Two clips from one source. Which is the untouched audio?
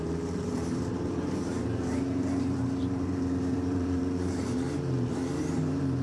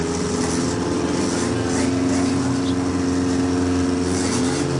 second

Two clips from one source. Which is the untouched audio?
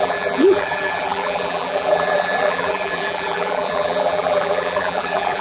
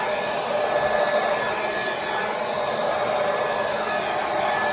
second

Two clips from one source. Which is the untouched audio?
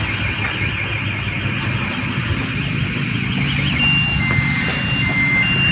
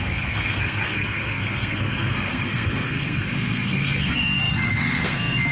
first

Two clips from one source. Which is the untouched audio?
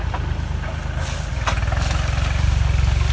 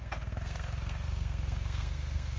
first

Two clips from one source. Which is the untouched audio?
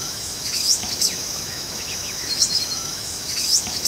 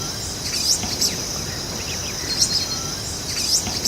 second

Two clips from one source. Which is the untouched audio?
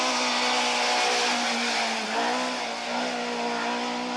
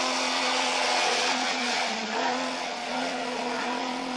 first